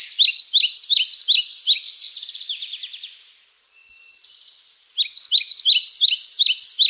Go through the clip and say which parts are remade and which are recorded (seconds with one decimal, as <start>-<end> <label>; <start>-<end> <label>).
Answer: 0.0-6.9 recorded